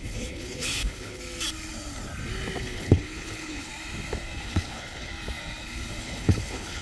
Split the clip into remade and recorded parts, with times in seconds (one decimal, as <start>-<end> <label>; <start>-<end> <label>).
0.0-1.2 remade; 1.2-2.6 recorded; 2.6-3.7 remade; 3.7-4.4 recorded; 4.4-5.1 remade; 5.1-6.0 recorded; 6.0-6.8 remade